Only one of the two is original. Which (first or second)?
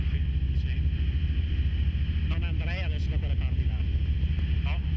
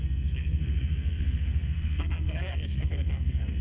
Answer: first